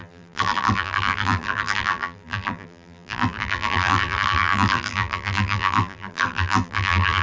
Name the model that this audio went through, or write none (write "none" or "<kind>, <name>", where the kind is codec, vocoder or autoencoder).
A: vocoder, BigVGAN v2